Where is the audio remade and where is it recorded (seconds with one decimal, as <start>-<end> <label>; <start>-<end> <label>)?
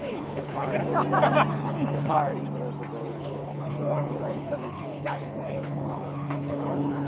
0.0-0.8 remade; 0.8-1.5 recorded; 1.5-2.3 remade; 2.3-3.0 recorded; 3.0-7.1 remade